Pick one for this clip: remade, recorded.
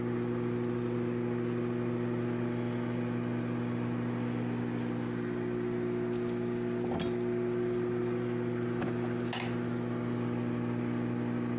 recorded